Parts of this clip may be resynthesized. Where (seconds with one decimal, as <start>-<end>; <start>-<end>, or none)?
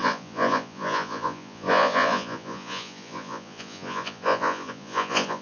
0.0-5.4